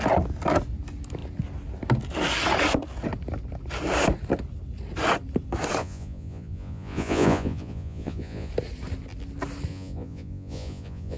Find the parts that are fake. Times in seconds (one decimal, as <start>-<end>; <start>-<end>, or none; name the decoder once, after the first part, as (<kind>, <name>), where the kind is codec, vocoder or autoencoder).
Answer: 5.8-8.5 (vocoder, Vocos); 9.7-11.2